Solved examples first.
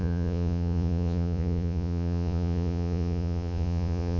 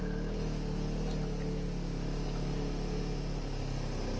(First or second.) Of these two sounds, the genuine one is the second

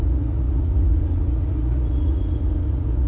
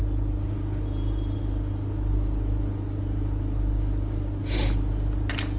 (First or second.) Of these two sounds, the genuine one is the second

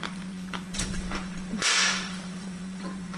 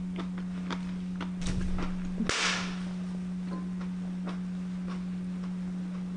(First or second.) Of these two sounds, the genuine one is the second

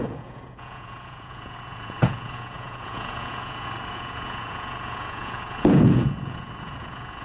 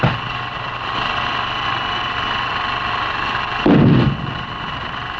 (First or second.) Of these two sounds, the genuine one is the second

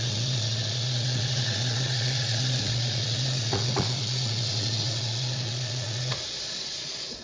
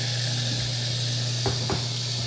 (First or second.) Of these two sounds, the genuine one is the second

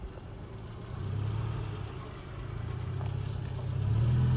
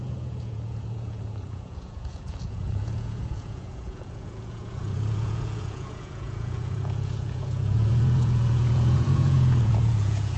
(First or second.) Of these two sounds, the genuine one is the first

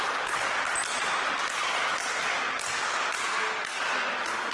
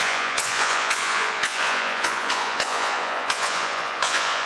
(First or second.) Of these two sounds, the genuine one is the first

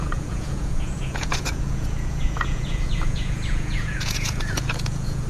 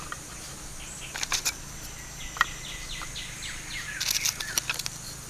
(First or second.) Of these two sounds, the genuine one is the second